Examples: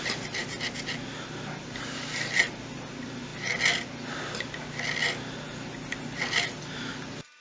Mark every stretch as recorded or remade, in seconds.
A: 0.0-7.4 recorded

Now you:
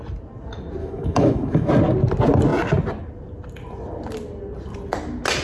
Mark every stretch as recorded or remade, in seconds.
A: 0.0-0.8 recorded; 0.8-1.7 remade; 1.7-5.4 recorded